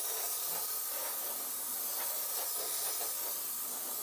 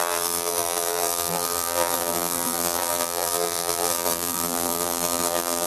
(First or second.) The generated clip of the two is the second